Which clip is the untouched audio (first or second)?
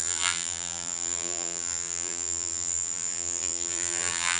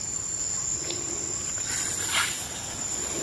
second